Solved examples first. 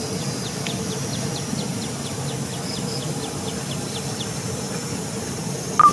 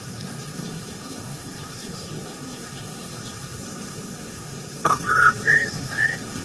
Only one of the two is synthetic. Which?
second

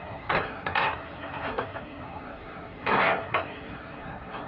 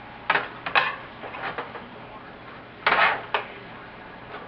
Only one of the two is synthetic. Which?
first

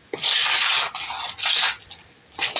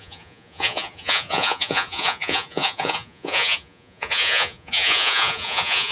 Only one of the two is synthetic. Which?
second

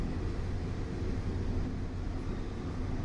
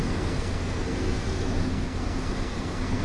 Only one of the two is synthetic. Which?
second